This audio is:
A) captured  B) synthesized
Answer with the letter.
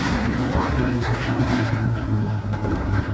B